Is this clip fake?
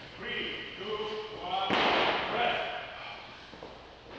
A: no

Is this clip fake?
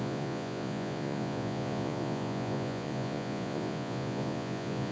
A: yes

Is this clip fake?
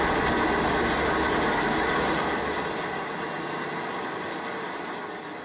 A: no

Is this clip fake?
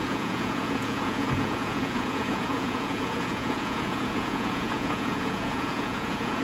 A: yes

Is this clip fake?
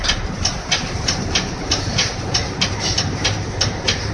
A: yes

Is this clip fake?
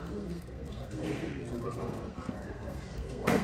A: yes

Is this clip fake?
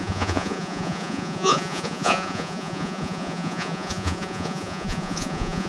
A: yes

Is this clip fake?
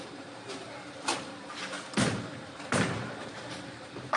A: yes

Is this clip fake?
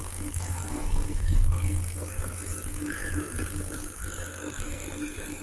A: yes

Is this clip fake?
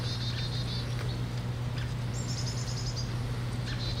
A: no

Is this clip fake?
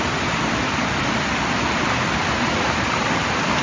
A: no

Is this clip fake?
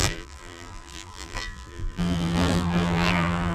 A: yes